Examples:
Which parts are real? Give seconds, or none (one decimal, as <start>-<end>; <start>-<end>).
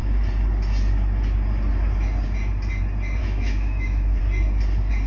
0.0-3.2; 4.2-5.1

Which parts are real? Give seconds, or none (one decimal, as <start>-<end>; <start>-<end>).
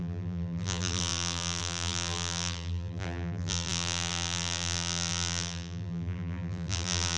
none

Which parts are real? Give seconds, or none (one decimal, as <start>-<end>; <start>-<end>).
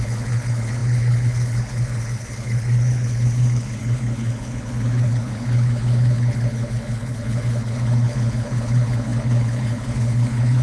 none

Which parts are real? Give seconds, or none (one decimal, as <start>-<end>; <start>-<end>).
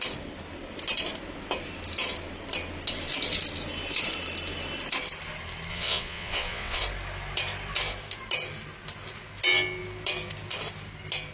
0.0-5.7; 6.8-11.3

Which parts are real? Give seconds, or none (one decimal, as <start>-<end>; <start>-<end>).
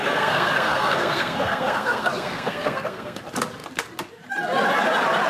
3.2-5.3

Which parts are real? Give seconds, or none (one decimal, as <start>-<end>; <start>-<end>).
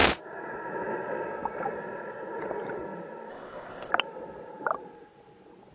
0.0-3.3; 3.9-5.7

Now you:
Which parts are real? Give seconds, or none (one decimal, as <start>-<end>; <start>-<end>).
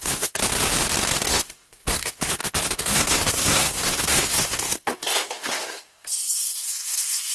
0.4-1.3